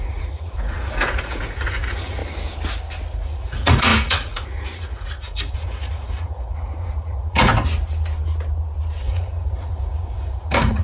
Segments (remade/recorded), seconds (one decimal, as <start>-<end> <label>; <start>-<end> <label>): 0.0-2.2 remade; 2.2-3.1 recorded; 3.1-7.5 remade; 7.5-9.0 recorded; 9.0-10.8 remade